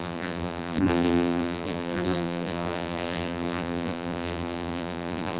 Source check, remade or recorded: remade